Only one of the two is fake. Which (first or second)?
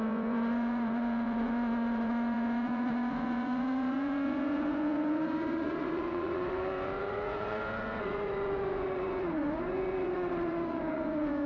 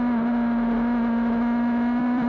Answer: first